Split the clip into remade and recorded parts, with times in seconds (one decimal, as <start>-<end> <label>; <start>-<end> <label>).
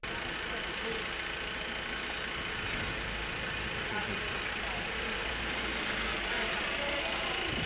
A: 0.0-4.0 recorded; 4.0-5.3 remade; 5.3-6.1 recorded; 6.1-7.0 remade; 7.0-7.7 recorded